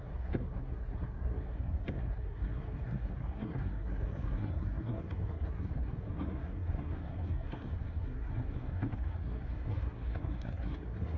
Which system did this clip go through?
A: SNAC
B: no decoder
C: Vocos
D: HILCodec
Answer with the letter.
A